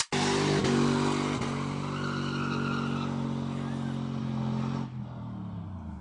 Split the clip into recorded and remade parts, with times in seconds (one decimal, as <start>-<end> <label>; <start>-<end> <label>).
0.0-6.0 recorded